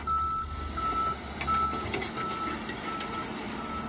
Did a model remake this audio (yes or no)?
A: no